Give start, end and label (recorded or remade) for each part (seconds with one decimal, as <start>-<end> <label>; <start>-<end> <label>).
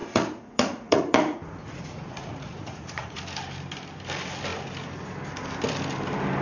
0.0-3.2 remade; 3.2-6.4 recorded